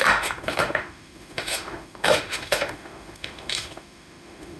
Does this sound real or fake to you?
fake